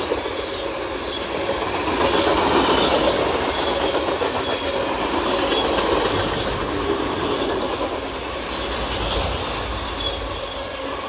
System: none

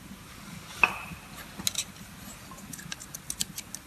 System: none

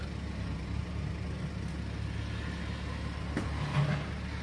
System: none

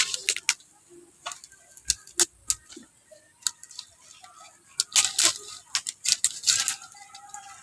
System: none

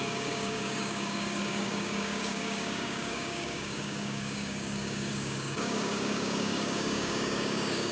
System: codec, DAC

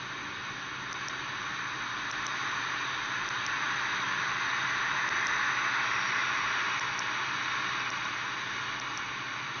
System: none